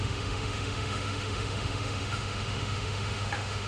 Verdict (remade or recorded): remade